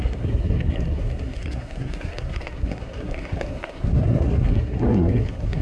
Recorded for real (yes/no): no